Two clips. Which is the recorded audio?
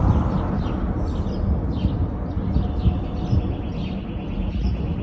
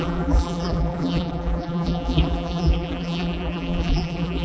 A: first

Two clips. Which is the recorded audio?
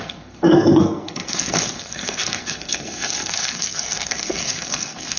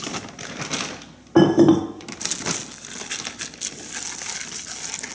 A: second